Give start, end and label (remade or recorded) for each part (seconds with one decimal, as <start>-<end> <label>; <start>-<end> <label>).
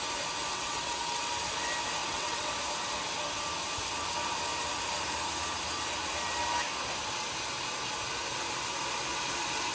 0.0-0.5 recorded; 0.5-1.3 remade; 1.3-2.0 recorded; 2.0-2.5 remade; 2.5-9.7 recorded